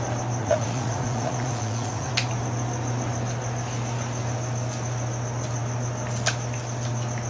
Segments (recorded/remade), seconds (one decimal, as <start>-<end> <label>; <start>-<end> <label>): 0.0-0.4 recorded; 0.4-2.1 remade; 2.1-7.3 recorded